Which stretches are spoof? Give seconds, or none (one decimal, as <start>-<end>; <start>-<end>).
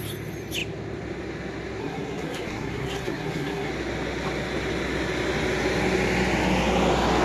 1.8-3.7